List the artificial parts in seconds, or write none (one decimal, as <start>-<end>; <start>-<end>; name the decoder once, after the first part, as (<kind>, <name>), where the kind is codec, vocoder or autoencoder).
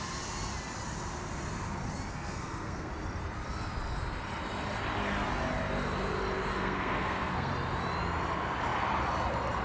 2.1-2.9 (codec, SNAC); 6.5-7.5